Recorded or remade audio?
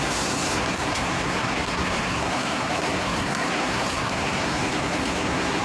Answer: remade